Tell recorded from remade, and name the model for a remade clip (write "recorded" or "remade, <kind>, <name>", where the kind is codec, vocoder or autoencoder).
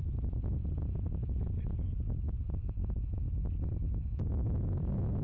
recorded